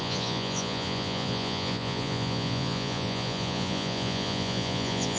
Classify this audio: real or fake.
fake